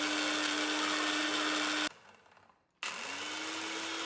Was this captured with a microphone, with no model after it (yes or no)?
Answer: yes